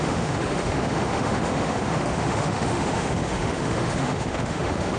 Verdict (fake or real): fake